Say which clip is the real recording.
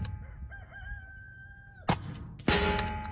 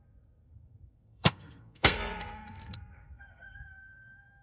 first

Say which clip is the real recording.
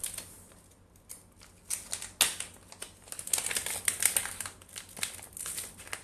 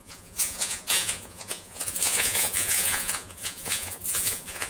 first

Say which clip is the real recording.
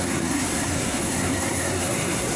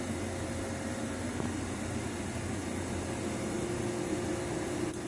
second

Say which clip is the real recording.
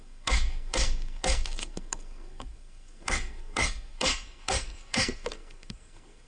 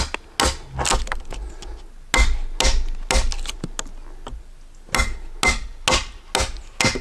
second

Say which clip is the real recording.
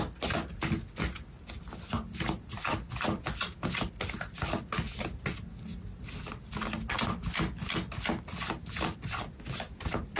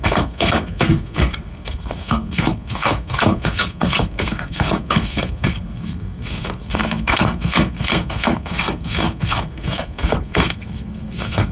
first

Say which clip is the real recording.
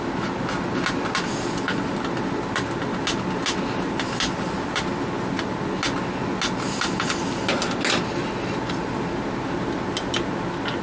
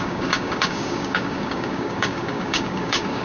first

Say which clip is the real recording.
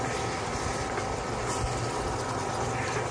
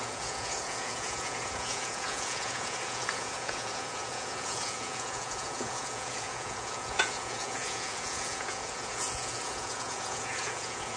first